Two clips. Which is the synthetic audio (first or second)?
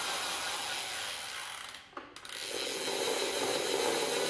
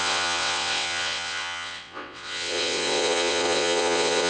second